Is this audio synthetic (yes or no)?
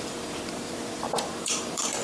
yes